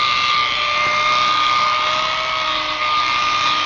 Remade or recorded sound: recorded